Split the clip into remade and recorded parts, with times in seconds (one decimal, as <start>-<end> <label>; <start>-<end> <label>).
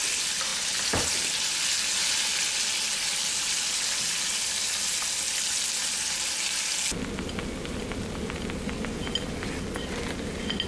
0.0-10.7 recorded